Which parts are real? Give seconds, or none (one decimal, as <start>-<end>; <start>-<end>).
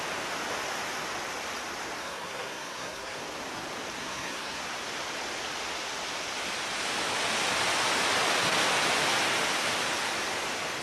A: 0.0-2.0; 3.2-4.0; 4.6-10.8